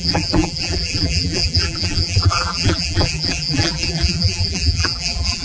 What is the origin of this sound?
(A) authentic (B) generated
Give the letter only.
B